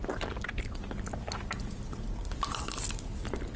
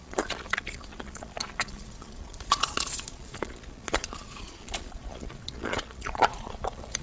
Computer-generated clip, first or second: second